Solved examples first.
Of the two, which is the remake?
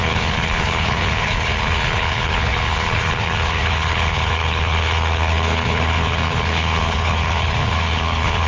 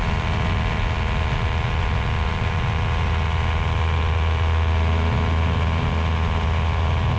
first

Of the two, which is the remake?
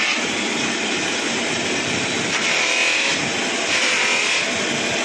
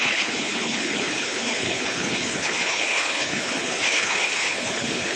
second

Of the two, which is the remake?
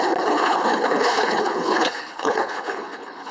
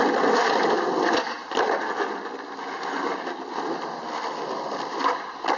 first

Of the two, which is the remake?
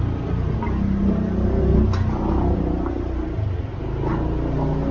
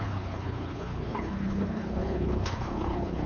second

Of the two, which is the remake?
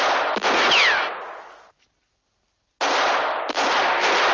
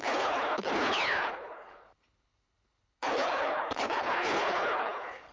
second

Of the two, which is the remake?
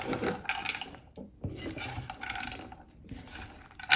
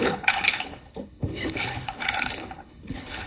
second